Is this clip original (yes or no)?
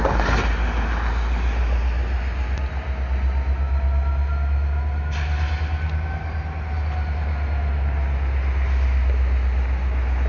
yes